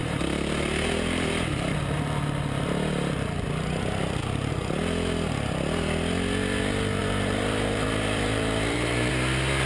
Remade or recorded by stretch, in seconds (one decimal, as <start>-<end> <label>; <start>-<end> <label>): 0.0-7.0 recorded; 7.0-9.1 remade; 9.1-9.7 recorded